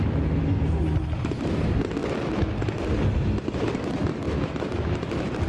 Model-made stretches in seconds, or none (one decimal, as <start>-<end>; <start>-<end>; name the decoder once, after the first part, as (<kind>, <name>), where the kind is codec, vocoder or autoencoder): none